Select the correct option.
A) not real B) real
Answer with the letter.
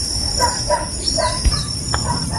A